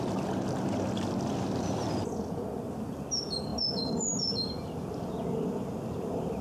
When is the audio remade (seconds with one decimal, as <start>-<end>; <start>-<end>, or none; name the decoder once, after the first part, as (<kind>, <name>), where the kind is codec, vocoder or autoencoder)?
none